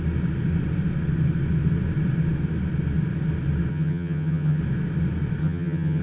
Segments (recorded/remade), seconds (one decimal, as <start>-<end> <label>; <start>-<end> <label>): 0.0-3.7 recorded; 3.7-4.6 remade; 4.6-5.4 recorded; 5.4-6.0 remade